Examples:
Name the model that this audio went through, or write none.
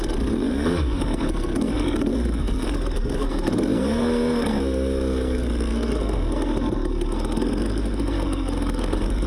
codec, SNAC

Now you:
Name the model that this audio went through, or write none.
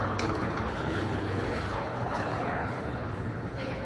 codec, HILCodec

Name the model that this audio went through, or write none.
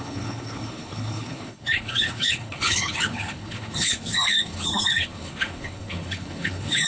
codec, HILCodec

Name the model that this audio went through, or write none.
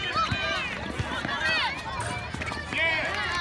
none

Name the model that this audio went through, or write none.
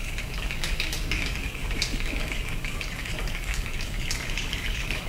codec, DAC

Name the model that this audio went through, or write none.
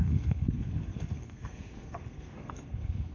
codec, SNAC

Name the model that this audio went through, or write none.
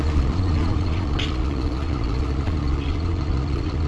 vocoder, Vocos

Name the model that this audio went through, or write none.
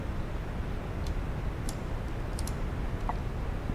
none